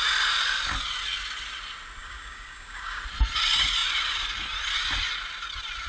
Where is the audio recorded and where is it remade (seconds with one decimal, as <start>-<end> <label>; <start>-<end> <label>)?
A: 0.0-2.0 recorded; 2.0-3.0 remade; 3.0-5.9 recorded